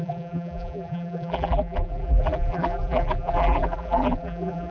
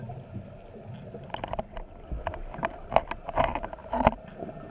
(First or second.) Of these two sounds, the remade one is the first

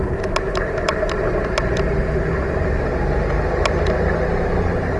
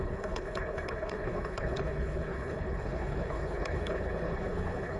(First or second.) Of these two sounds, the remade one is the second